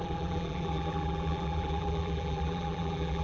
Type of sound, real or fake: fake